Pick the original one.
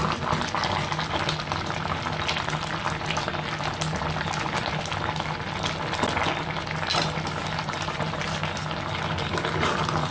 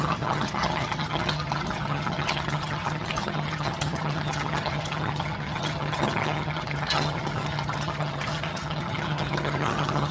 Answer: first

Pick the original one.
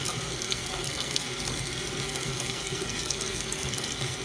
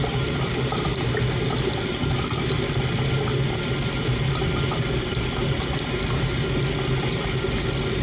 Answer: second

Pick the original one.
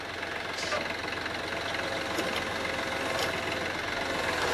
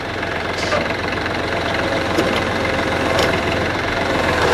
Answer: first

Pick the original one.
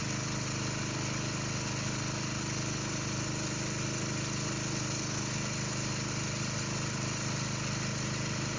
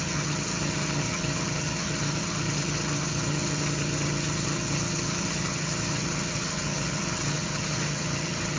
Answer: first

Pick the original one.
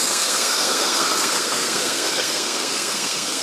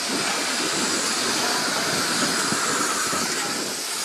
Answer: second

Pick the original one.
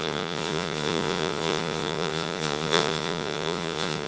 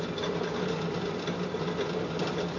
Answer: second